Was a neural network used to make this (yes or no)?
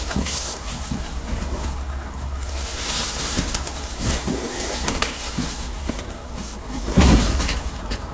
yes